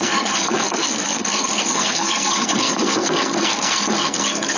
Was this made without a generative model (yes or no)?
no